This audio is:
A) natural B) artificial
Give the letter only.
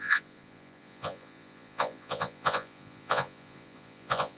B